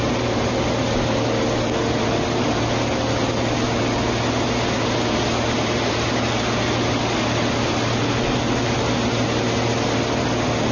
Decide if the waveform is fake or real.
real